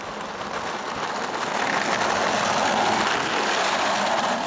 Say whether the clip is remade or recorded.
recorded